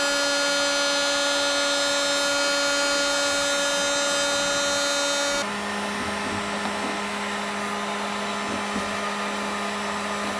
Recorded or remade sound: recorded